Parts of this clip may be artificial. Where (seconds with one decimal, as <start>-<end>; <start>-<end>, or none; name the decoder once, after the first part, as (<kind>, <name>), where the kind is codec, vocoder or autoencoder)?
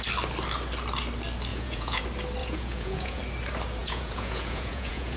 1.5-2.0 (vocoder, Vocos); 2.4-3.2; 3.8-5.2